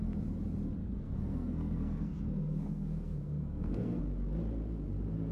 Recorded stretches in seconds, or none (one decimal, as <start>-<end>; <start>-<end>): 0.0-0.8; 4.0-5.3